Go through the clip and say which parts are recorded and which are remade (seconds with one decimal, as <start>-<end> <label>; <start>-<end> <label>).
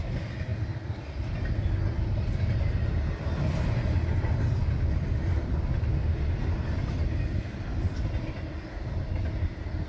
0.0-9.9 recorded